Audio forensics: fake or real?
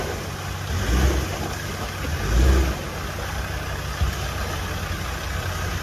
real